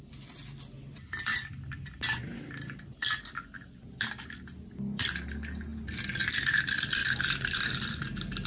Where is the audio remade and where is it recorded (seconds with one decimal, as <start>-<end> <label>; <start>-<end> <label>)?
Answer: 0.0-1.3 recorded; 1.3-3.2 remade; 3.2-8.5 recorded